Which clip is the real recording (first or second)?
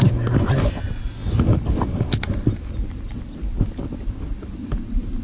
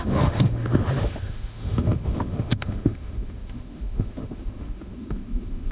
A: first